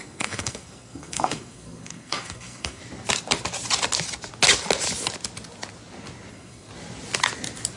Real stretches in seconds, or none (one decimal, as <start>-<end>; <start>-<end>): 2.8-6.3; 6.7-7.8